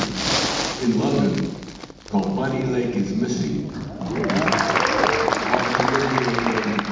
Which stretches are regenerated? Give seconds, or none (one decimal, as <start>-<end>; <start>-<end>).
none